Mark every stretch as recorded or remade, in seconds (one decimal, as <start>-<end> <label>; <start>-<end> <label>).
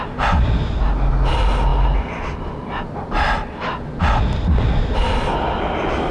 0.0-6.1 recorded